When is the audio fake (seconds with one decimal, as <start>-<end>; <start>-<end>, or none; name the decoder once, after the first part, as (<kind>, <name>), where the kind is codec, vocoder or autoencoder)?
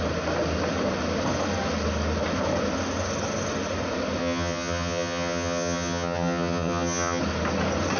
4.2-7.2 (vocoder, HiFi-GAN)